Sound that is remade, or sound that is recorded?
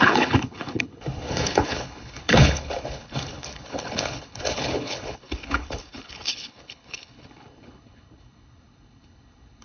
remade